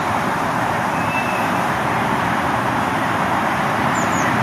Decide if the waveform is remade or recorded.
remade